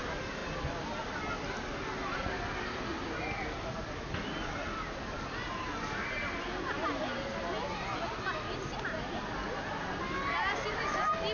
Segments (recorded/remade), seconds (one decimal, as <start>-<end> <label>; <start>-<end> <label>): 0.0-11.3 recorded